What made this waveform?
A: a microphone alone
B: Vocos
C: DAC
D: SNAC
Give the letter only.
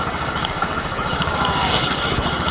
C